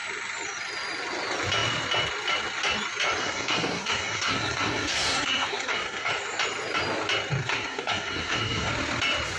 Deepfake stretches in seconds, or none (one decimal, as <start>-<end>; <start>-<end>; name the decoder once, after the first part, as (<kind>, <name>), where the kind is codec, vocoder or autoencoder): 3.2-6.1 (codec, SNAC); 7.4-8.7

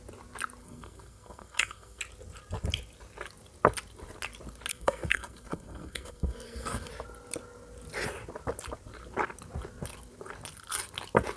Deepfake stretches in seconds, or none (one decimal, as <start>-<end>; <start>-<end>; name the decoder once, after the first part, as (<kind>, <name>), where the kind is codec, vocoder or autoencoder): 0.6-2.0 (codec, SNAC); 4.7-6.9

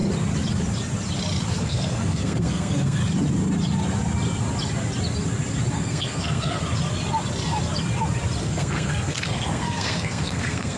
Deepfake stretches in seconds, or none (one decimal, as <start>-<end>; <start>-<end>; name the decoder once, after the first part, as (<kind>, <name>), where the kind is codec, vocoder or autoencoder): 1.6-3.0 (codec, SNAC); 5.7-6.6; 8.4-10.8

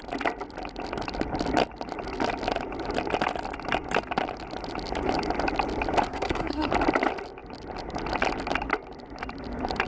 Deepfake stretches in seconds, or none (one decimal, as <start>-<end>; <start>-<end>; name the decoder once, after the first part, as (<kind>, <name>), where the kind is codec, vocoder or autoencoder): 6.1-6.7 (codec, SNAC)

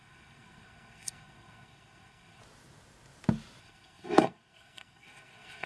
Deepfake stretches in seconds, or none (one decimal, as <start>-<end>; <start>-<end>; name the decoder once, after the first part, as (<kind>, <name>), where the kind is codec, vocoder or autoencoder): 0.0-2.4 (codec, SNAC); 3.6-5.7